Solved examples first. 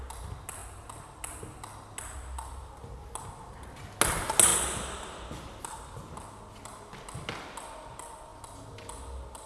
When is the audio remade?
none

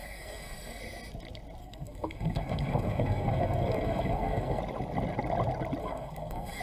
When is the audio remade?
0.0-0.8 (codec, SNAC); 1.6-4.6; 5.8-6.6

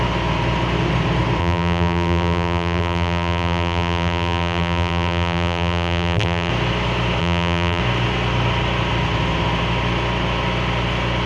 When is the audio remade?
1.4-6.5 (vocoder, BigVGAN v2); 7.2-7.8

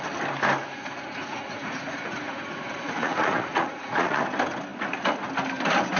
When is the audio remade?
0.6-4.2 (vocoder, Vocos)

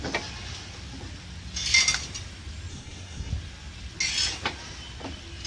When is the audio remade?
2.7-3.3 (codec, SNAC)